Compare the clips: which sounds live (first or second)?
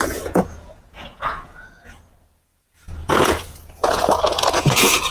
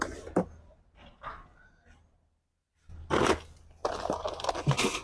second